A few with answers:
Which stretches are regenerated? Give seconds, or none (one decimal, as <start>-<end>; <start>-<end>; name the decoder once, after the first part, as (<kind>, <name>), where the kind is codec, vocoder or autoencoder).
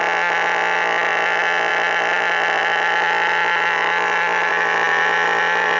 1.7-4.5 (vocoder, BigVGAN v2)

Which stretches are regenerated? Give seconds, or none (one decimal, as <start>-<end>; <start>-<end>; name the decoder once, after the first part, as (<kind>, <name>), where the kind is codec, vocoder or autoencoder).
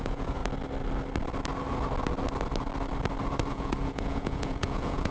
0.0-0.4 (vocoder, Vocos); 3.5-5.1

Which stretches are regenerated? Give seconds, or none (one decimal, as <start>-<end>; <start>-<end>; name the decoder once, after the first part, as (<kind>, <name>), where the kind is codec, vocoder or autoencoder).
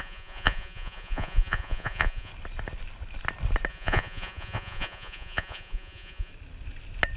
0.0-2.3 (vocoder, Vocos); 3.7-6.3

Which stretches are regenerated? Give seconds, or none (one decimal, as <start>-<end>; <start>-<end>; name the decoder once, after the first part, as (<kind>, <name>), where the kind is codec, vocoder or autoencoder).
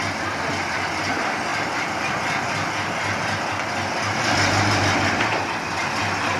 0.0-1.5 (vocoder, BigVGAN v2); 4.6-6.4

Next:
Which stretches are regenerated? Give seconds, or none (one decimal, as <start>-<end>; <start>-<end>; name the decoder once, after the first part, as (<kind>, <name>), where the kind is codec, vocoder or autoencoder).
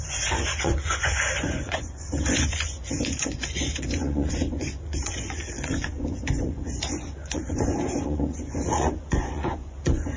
0.0-10.2 (vocoder, Vocos)